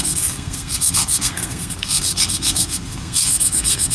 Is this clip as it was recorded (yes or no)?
no